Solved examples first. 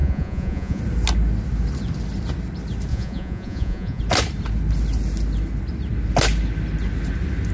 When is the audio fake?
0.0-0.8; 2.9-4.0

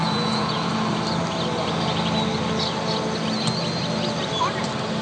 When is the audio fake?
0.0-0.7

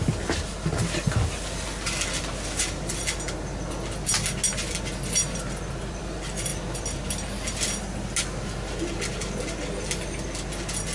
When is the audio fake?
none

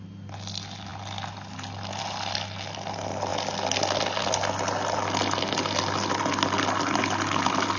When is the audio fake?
none

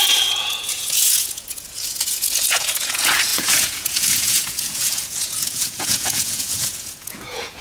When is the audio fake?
0.0-7.6

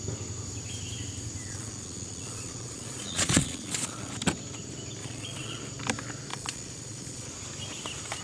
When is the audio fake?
1.4-4.1; 5.0-5.6; 6.3-7.3

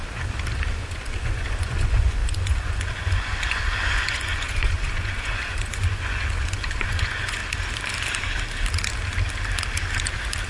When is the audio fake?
0.7-7.4